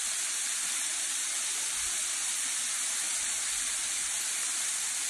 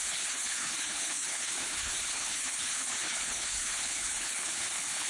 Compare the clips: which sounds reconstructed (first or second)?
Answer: second